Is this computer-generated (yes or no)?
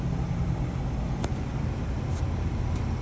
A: no